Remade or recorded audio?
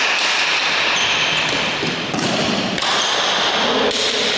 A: recorded